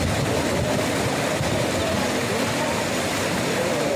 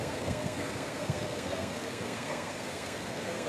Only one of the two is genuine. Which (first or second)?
first